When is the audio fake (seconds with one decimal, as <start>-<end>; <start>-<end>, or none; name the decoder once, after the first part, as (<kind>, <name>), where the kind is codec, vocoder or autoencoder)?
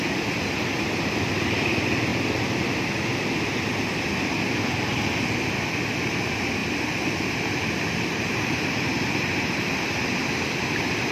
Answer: none